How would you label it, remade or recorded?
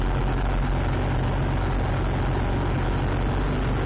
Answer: recorded